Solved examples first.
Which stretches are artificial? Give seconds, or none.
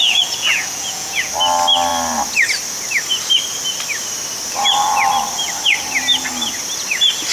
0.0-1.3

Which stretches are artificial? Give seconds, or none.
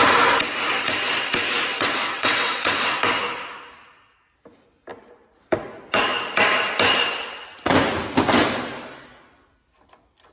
1.7-3.0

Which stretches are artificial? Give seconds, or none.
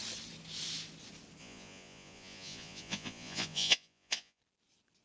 1.4-4.4